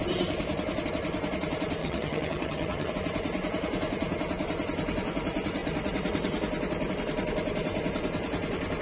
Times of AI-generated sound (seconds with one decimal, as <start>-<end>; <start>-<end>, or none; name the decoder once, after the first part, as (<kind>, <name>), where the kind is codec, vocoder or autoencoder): 1.8-2.9 (vocoder, HiFi-GAN)